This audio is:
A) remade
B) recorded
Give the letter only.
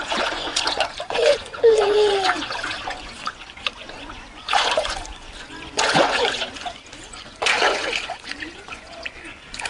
A